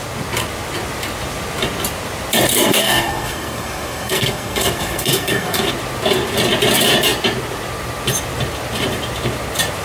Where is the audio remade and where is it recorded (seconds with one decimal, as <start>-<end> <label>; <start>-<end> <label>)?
0.0-2.5 recorded; 2.5-5.7 remade; 5.7-9.8 recorded